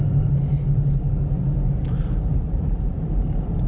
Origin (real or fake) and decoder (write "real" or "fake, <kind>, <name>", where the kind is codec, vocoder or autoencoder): real